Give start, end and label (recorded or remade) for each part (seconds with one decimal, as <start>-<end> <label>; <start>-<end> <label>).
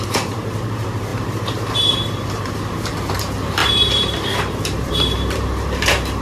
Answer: 0.0-6.2 remade